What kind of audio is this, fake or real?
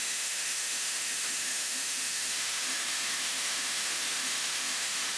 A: fake